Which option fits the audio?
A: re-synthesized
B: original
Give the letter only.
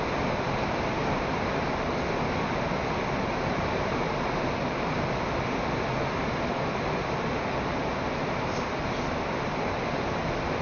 B